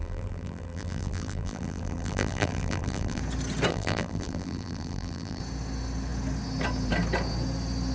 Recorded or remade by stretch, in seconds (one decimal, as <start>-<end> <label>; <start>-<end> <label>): 0.0-3.2 remade; 3.2-3.7 recorded; 3.7-5.4 remade; 5.4-7.9 recorded